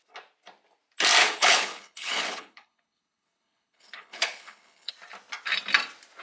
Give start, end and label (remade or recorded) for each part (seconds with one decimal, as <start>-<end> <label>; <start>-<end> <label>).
0.0-1.2 recorded; 1.2-4.9 remade; 4.9-6.2 recorded